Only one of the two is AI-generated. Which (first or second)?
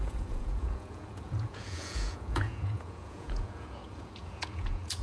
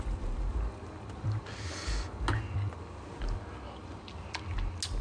first